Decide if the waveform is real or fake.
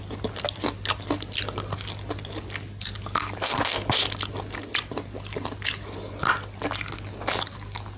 real